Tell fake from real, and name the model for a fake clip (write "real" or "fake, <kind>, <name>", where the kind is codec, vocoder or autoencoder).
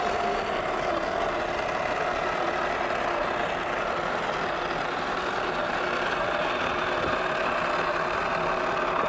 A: real